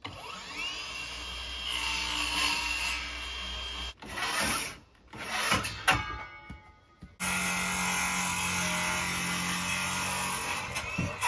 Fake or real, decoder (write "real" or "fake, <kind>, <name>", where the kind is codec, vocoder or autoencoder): real